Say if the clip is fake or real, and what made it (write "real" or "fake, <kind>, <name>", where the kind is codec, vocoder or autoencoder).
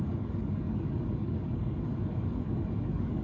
fake, codec, DAC